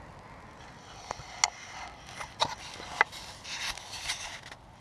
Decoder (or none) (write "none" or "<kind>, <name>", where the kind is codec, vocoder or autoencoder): none